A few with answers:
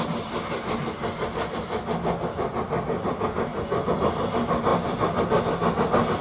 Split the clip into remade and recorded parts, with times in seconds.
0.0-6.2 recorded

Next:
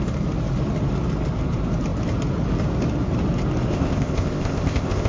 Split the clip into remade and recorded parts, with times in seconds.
0.0-3.7 recorded; 3.7-5.1 remade